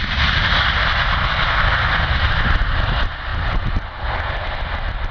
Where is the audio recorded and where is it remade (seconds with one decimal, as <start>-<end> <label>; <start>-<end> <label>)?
0.0-5.1 recorded